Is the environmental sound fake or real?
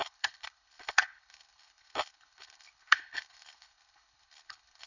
fake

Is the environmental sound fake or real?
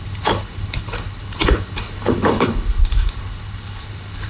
fake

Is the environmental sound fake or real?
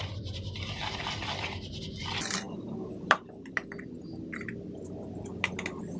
real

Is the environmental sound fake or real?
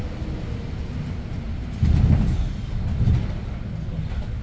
real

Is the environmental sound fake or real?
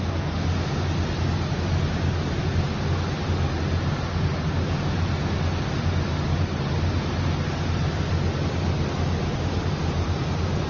real